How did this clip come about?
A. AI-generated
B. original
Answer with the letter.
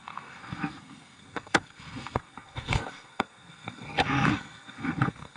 A